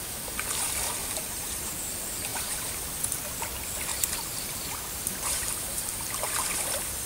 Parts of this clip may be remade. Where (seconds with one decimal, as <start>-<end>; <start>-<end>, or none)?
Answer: 1.0-1.7; 2.3-3.0; 3.9-6.2